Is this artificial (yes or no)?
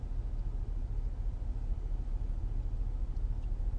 no